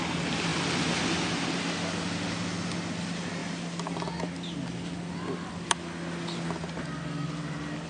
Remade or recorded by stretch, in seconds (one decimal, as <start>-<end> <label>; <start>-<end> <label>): 0.0-7.9 recorded